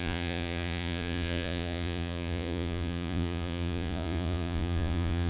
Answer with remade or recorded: remade